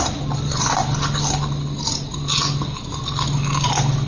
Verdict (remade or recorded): recorded